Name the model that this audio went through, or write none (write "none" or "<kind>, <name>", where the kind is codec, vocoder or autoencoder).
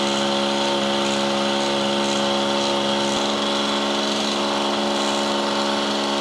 none